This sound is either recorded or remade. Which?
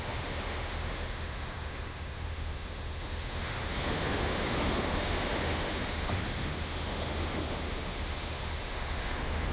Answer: remade